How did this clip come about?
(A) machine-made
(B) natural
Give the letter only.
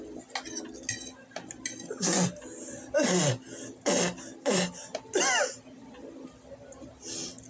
B